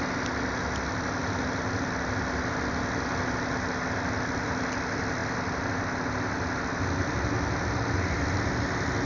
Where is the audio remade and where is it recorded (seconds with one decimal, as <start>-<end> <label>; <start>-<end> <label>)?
0.0-9.1 recorded